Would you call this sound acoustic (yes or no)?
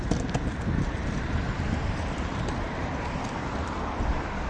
no